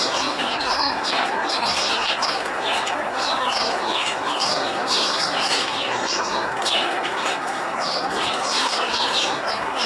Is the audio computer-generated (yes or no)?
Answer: yes